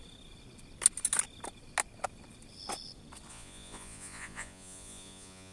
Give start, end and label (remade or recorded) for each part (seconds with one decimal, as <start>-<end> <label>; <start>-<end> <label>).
0.0-3.3 recorded; 3.3-5.5 remade